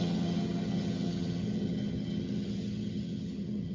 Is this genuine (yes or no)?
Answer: no